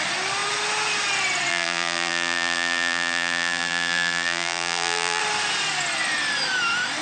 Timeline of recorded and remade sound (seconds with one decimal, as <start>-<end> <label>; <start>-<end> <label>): 0.0-1.5 recorded; 1.5-5.2 remade; 5.2-7.0 recorded